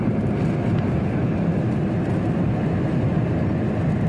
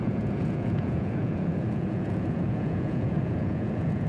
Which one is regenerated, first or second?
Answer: second